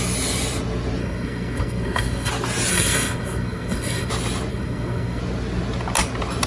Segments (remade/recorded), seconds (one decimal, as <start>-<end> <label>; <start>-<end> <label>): 0.0-1.0 recorded; 1.0-2.3 remade; 2.3-2.7 recorded; 2.7-4.1 remade; 4.1-4.5 recorded; 4.5-5.2 remade; 5.2-6.5 recorded